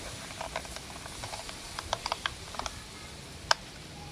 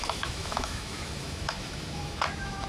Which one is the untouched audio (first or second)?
first